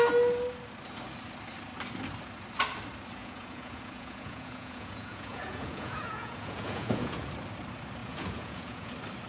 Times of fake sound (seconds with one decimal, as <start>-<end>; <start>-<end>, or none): 3.2-7.3; 8.0-8.9